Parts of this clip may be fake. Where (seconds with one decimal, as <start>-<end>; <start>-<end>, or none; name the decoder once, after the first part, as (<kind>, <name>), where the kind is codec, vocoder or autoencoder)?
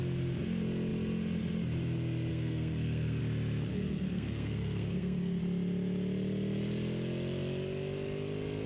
2.3-3.2 (codec, SNAC); 3.7-5.4